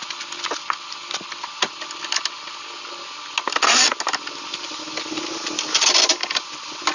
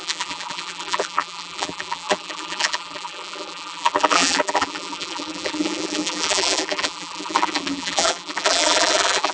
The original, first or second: first